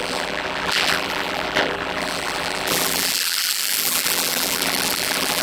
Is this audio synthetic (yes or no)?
yes